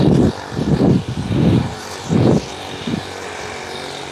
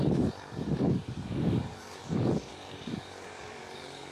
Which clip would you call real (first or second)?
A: first